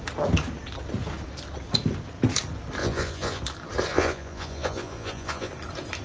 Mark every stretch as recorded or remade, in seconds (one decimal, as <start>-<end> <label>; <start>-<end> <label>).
0.0-2.8 recorded; 2.8-3.4 remade; 3.4-3.9 recorded; 3.9-5.5 remade; 5.5-6.0 recorded